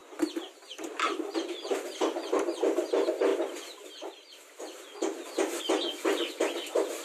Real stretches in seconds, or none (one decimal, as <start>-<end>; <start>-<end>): 0.0-7.0